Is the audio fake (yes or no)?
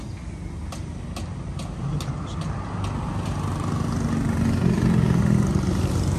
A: no